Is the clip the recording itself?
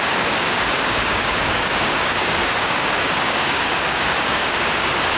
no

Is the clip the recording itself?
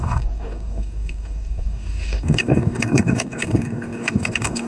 no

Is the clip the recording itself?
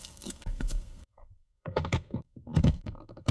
no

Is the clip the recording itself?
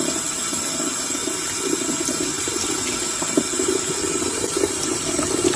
yes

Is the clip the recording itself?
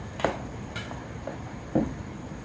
yes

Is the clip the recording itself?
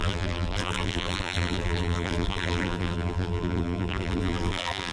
no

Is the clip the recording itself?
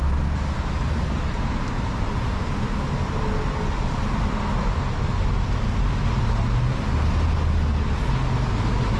yes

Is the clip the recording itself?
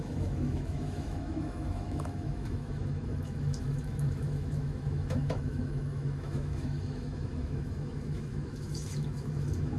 no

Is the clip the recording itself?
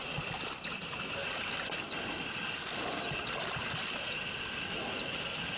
yes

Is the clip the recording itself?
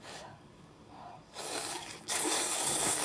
no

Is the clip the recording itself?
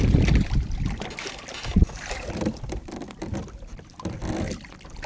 no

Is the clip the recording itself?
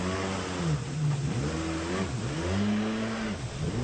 yes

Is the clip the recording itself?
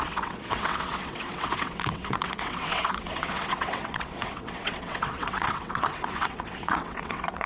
no